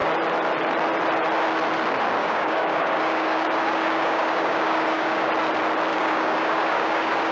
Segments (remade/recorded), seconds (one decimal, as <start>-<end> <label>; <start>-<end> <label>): 0.0-2.2 recorded; 2.2-5.3 remade; 5.3-5.9 recorded; 5.9-7.3 remade